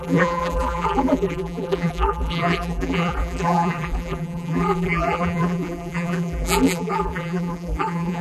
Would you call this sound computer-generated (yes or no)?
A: yes